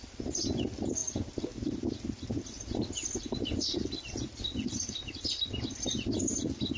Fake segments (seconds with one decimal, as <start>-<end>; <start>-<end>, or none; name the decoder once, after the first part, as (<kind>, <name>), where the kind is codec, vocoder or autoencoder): none